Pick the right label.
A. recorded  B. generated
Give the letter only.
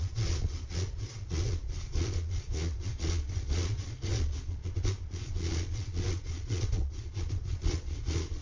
B